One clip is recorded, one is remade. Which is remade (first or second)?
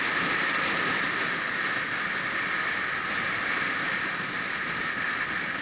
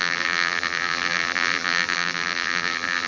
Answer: second